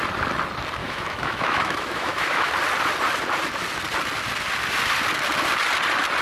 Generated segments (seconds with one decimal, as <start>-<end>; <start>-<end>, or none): 0.8-2.5